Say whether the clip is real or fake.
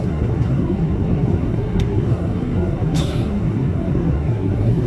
fake